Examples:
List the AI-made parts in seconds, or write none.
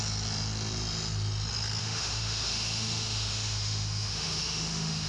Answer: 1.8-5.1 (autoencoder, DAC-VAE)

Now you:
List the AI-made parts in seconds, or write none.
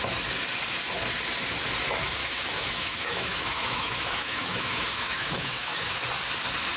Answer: 2.2-6.0 (autoencoder, DAC-VAE)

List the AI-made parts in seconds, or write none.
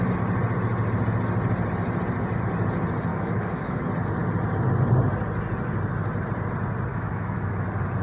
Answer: 3.1-3.8 (autoencoder, DAC-VAE); 6.9-7.5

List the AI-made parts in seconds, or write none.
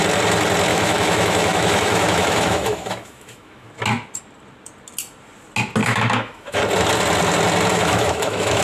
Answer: 0.7-3.7 (autoencoder, DAC-VAE); 5.8-6.6; 7.7-8.6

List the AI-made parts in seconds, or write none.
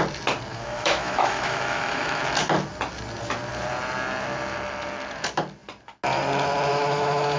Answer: 0.5-2.2 (autoencoder, DAC-VAE); 6.7-7.4